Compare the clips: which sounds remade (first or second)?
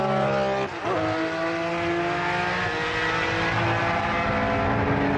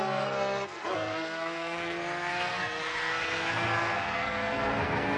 second